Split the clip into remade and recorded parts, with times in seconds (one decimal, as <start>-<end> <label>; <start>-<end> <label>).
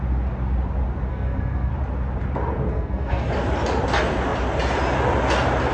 0.0-1.1 recorded; 1.1-1.7 remade; 1.7-2.7 recorded; 2.7-3.3 remade; 3.3-5.7 recorded